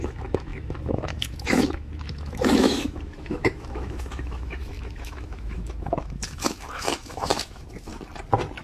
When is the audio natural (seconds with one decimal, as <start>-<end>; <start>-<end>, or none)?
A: 7.9-8.6